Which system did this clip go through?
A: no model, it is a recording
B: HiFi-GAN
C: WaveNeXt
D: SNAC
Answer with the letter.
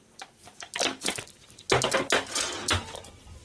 A